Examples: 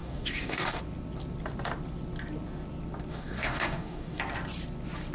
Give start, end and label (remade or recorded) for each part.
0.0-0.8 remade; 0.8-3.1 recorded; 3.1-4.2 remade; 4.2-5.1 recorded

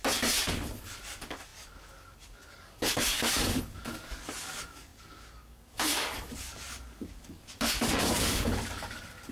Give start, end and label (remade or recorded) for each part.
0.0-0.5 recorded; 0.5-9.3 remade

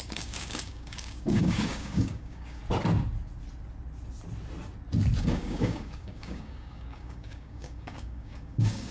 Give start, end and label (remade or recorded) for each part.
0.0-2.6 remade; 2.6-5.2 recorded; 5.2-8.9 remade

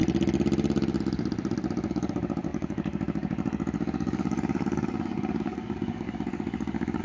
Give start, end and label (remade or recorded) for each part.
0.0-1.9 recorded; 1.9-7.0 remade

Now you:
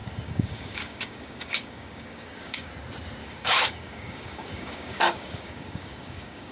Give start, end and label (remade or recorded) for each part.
0.0-2.7 remade; 2.7-3.2 recorded; 3.2-6.5 remade